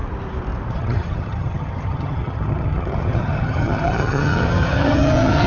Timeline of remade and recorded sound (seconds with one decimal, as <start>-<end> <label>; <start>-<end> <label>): 0.0-0.7 recorded; 0.7-5.5 remade